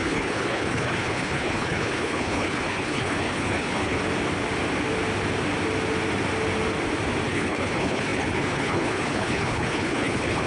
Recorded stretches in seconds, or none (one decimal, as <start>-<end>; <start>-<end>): 4.0-7.3